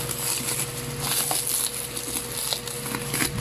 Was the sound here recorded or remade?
recorded